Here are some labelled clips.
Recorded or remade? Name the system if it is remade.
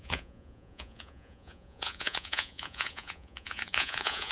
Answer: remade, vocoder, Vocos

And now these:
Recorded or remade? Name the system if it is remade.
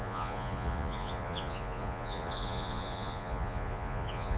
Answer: remade, vocoder, Vocos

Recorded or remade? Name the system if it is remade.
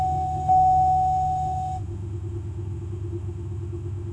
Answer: remade, autoencoder, DAC-VAE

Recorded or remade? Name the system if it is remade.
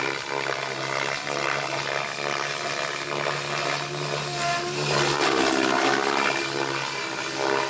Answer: recorded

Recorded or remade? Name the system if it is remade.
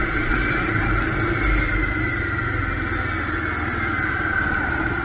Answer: recorded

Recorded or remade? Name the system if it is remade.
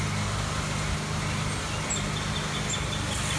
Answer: recorded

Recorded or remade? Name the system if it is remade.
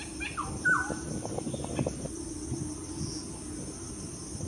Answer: recorded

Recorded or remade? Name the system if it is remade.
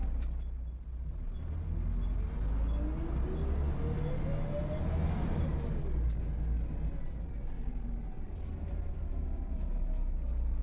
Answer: recorded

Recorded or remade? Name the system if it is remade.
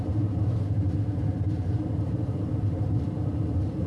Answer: remade, vocoder, BigVGAN v2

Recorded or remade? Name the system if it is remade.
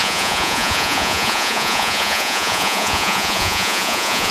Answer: remade, vocoder, Vocos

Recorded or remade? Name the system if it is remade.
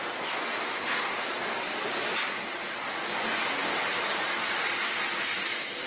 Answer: recorded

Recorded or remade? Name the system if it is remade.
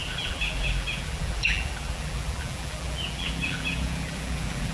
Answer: remade, vocoder, BigVGAN v2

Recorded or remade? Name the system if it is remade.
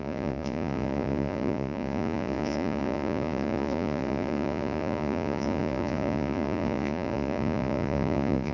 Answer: remade, vocoder, Vocos